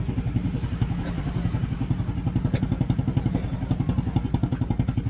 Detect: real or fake real